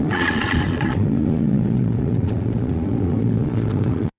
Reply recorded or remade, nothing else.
remade